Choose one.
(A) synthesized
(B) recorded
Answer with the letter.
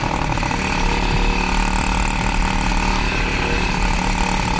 B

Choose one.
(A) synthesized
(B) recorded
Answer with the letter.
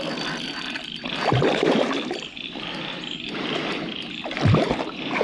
B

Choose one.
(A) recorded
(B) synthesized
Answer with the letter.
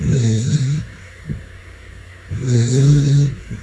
B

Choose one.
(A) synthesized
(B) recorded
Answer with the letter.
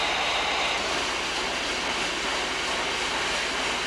B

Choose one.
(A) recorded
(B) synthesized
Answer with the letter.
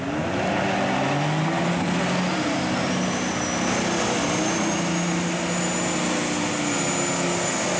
A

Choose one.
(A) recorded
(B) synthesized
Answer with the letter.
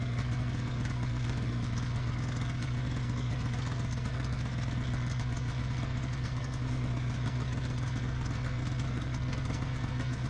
B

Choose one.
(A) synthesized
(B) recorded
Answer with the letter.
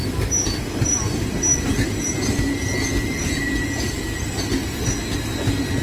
B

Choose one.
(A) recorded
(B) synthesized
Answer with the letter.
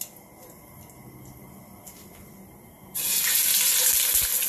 A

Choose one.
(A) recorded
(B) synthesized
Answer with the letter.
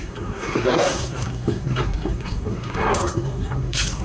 B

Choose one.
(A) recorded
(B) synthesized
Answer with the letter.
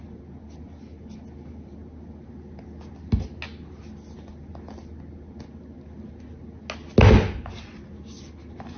A